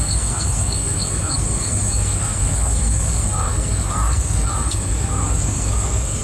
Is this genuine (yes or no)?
no